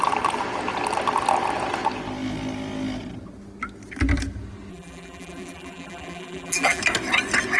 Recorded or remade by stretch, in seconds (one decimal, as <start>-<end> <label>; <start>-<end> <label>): 0.0-4.7 recorded; 4.7-6.8 remade; 6.8-7.6 recorded